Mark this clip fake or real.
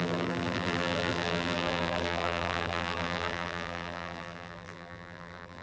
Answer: fake